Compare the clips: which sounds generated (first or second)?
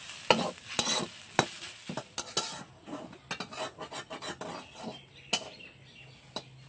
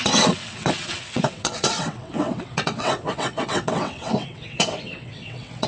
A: second